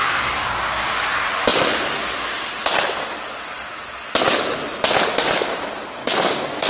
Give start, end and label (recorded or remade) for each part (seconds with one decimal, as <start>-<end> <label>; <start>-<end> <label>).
0.0-1.0 remade; 1.0-6.0 recorded; 6.0-6.7 remade